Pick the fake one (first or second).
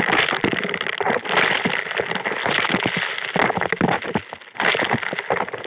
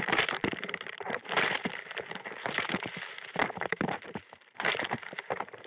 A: second